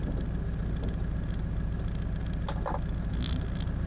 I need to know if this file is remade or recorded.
recorded